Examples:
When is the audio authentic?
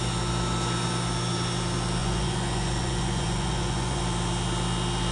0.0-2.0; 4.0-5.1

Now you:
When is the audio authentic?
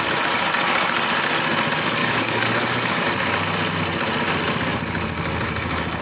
0.0-2.0; 3.0-6.0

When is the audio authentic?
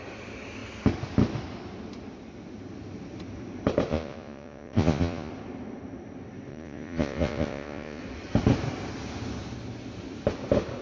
0.0-3.9; 5.3-6.5; 8.0-10.8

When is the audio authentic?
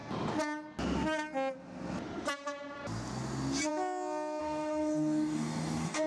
0.0-4.4